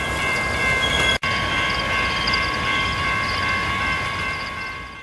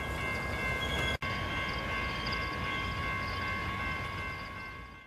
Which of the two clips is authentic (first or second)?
second